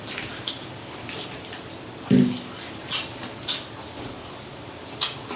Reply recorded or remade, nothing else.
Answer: recorded